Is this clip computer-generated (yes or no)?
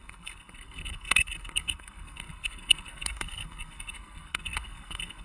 yes